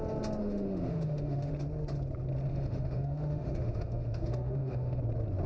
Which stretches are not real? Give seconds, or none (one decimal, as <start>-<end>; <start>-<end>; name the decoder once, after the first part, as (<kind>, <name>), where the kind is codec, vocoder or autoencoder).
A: 0.4-1.5 (autoencoder, DAC-VAE); 2.5-5.0

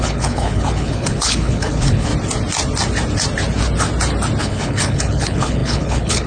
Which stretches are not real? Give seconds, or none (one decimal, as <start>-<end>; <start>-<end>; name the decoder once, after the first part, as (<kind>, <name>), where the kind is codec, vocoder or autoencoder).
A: 0.0-2.1 (codec, HILCodec); 4.4-6.3

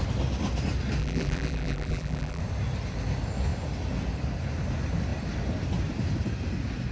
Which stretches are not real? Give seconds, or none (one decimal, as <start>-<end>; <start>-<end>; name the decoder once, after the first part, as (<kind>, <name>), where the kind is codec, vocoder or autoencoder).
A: 1.0-2.4 (vocoder, BigVGAN v2)